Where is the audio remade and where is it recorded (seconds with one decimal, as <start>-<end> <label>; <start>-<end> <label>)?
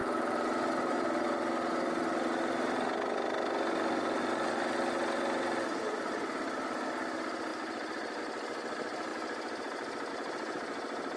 0.0-7.5 recorded; 7.5-8.2 remade; 8.2-11.2 recorded